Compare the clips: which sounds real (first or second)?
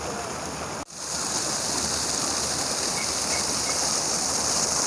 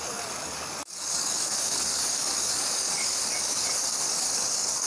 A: first